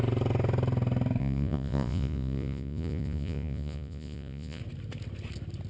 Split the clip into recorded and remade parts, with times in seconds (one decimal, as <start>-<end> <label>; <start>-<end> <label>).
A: 0.0-1.2 recorded; 1.2-4.6 remade; 4.6-5.7 recorded